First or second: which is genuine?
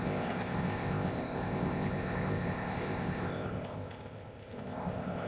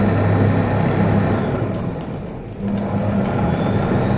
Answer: second